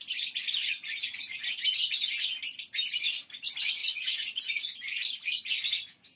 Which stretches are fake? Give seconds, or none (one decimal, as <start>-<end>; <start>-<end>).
none